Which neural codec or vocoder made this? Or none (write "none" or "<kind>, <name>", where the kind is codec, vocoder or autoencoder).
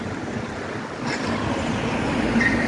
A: none